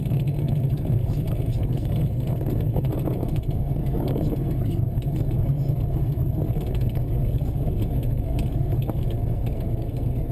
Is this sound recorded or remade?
remade